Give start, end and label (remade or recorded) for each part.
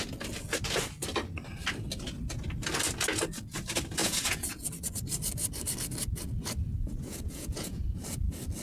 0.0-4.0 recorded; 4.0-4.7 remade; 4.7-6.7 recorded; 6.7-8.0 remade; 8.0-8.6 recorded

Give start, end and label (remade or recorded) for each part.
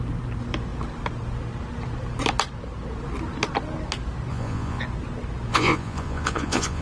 0.0-4.3 recorded; 4.3-4.8 remade; 4.8-5.5 recorded; 5.5-6.8 remade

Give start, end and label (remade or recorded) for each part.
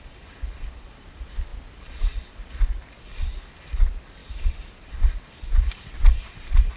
0.0-6.8 recorded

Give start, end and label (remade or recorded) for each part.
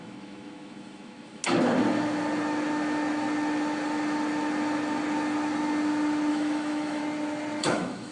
0.0-1.4 remade; 1.4-6.3 recorded; 6.3-7.0 remade; 7.0-7.6 recorded; 7.6-8.1 remade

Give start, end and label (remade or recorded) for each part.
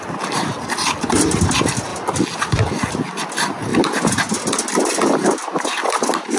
0.0-6.4 recorded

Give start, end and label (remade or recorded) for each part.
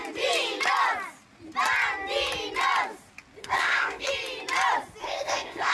0.0-3.4 recorded; 3.4-4.1 remade; 4.1-5.0 recorded; 5.0-5.7 remade